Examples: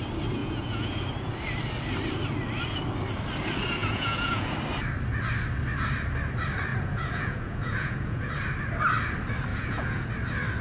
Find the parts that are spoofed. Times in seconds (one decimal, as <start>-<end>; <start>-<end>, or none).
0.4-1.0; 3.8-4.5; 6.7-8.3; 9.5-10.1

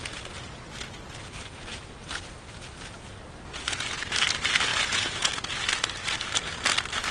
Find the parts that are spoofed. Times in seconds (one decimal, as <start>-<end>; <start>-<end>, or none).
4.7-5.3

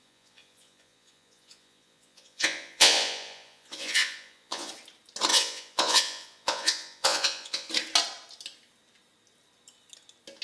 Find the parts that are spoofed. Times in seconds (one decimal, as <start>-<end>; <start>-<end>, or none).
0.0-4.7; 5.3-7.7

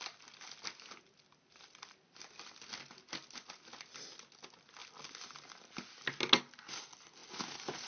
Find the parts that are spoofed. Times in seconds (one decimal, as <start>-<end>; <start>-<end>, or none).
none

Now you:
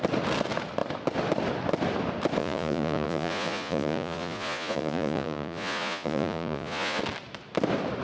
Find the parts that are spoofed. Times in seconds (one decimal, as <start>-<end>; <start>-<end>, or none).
2.4-7.0